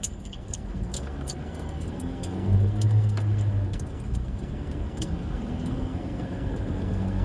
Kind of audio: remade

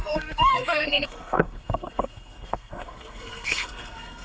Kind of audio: remade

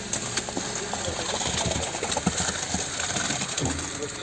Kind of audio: recorded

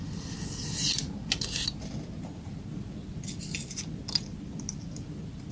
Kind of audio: recorded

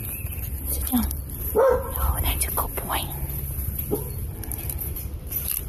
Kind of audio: recorded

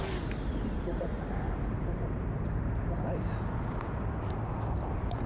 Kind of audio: recorded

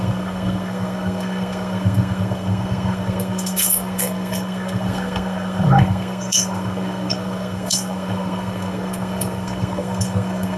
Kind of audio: remade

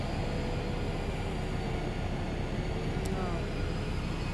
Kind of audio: recorded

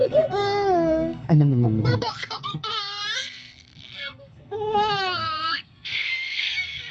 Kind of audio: remade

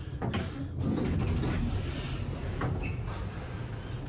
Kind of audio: recorded